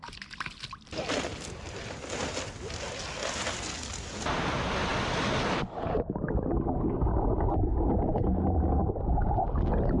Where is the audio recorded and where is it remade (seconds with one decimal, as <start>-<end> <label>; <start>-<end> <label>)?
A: 0.0-10.0 recorded